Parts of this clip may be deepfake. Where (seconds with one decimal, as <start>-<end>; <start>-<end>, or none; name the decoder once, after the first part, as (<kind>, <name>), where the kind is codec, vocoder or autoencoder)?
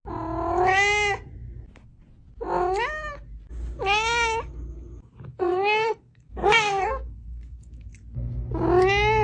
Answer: 5.3-7.9 (codec, SNAC)